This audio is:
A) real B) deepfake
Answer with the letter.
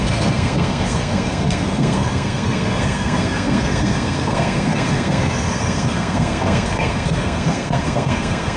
B